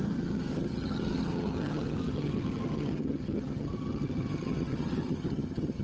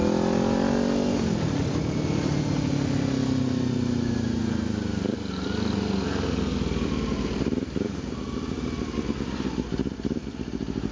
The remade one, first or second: first